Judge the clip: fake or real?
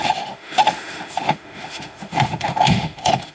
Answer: fake